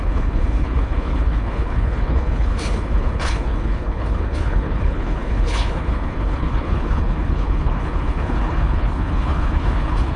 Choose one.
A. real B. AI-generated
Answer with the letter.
B